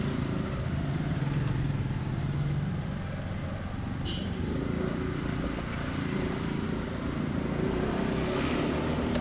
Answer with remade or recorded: recorded